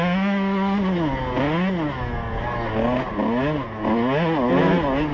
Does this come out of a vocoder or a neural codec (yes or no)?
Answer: no